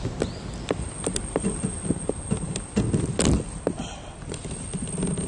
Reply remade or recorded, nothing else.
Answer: recorded